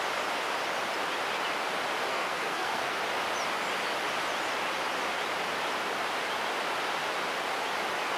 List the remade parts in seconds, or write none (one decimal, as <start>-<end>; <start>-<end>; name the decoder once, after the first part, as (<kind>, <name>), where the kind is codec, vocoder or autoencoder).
2.1-3.0 (codec, SNAC)